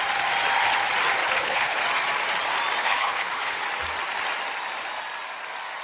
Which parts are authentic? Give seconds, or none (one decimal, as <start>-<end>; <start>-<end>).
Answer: 0.0-1.2; 1.8-2.8; 3.6-5.8